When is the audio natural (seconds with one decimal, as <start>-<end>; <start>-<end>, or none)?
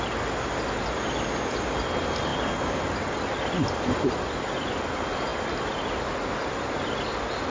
0.0-7.5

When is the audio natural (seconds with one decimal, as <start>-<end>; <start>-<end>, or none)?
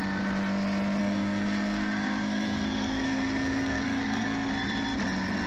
0.0-1.0; 4.5-5.5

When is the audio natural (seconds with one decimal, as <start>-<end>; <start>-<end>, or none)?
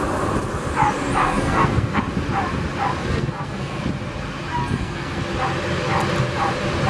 0.0-1.2; 2.0-3.0; 3.8-4.6; 5.2-6.9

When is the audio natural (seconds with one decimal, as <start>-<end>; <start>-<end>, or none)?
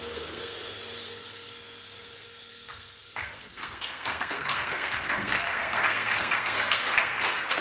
none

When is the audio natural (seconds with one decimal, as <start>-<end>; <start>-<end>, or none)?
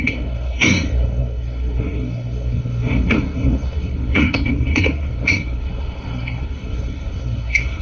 none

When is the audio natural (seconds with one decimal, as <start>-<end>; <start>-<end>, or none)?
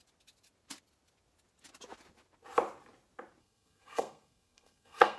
0.0-3.4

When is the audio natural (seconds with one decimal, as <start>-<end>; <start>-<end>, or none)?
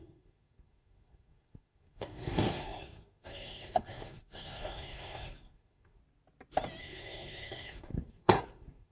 6.0-6.8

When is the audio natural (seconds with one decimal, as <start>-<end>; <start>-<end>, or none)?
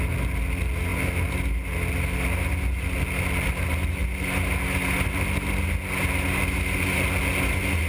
0.0-7.9